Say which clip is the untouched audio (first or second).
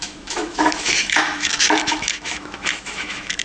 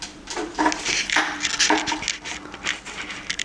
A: second